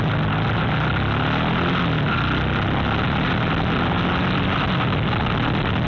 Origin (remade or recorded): recorded